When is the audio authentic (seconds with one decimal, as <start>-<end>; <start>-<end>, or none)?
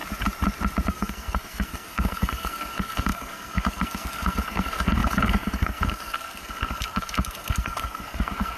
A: 0.0-0.9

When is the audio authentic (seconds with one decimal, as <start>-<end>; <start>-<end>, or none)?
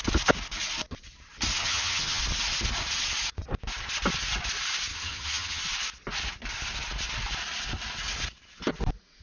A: 0.0-1.6; 2.2-4.9; 5.6-9.2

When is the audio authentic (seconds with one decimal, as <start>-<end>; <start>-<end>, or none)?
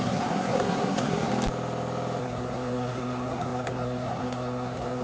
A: 1.3-2.2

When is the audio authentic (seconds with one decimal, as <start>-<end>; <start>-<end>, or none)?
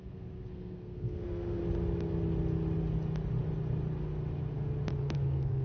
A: 1.6-5.0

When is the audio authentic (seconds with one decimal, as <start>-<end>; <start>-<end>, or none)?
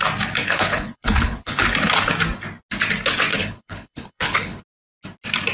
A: 0.0-0.4; 1.6-3.3; 4.6-5.5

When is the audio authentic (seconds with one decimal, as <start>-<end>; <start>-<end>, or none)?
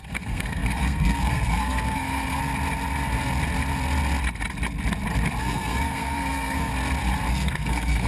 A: 2.4-5.4; 6.7-7.3